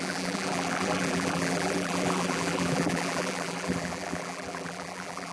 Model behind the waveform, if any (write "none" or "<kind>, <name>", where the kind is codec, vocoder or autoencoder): vocoder, BigVGAN v2